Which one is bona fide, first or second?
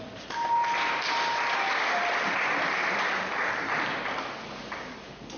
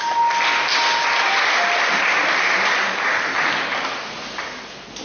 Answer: second